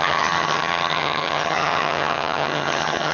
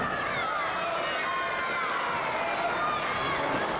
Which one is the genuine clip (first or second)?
second